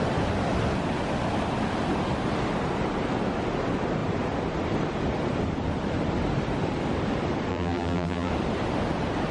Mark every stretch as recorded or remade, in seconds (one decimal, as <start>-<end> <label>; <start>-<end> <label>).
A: 0.0-7.5 recorded; 7.5-8.3 remade; 8.3-9.3 recorded